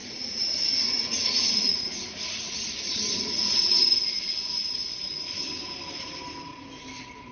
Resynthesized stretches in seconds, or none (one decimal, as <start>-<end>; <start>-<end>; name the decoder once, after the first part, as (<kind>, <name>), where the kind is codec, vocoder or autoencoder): 0.0-3.7 (vocoder, Vocos)